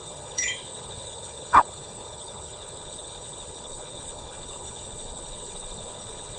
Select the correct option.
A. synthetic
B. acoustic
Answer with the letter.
A